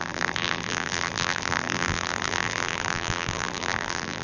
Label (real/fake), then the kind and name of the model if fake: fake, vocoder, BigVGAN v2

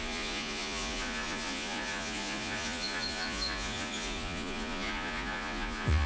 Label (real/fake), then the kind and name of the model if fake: fake, vocoder, Vocos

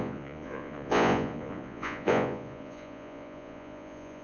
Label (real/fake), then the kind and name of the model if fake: fake, vocoder, Vocos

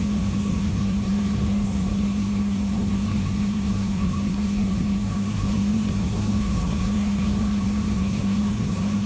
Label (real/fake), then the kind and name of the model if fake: fake, codec, SNAC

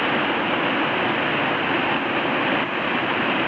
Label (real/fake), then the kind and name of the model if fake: real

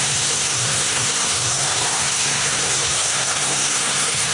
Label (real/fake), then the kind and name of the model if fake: fake, codec, SNAC